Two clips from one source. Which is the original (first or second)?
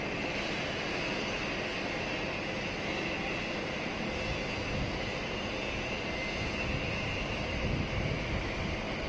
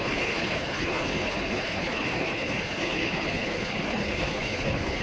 first